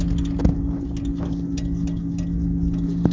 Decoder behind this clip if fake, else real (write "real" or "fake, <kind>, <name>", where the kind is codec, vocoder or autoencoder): real